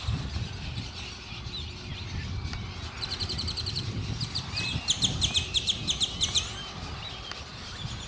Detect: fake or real real